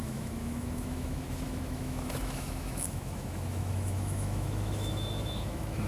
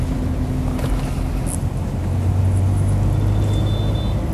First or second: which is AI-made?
first